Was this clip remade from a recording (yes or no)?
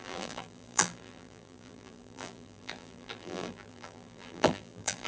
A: yes